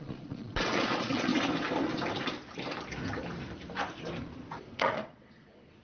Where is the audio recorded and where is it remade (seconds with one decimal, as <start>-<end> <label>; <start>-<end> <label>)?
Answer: 0.0-1.3 remade; 1.3-4.5 recorded; 4.5-5.8 remade

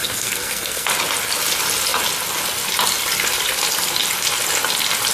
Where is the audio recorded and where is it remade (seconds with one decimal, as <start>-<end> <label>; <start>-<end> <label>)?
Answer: 0.0-0.9 remade; 0.9-5.1 recorded

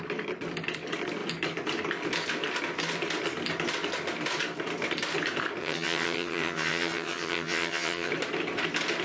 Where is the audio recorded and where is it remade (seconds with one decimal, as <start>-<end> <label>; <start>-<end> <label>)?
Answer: 0.0-5.6 recorded; 5.6-8.1 remade; 8.1-9.0 recorded